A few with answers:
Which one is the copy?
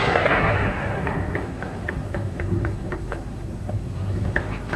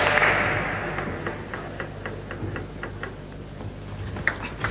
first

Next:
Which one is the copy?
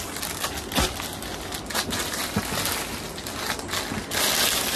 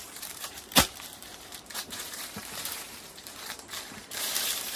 second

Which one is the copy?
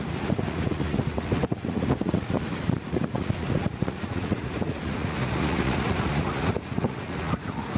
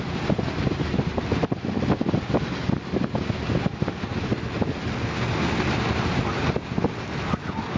first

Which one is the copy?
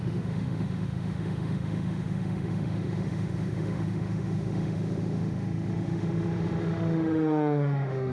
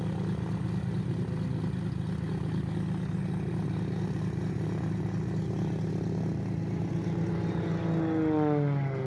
first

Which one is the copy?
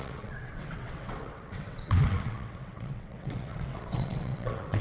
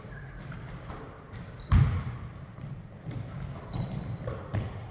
first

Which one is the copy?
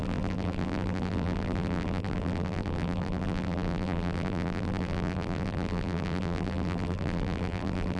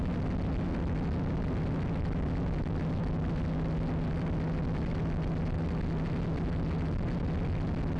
first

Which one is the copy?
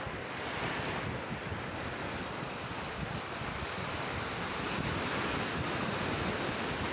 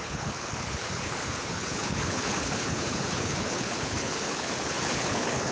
second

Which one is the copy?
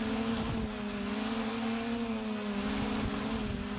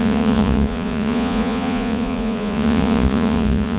second